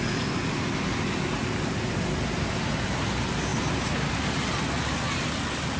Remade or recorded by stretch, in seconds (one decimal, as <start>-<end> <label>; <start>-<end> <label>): 0.0-5.8 recorded